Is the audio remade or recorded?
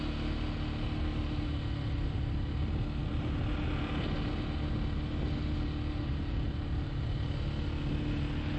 recorded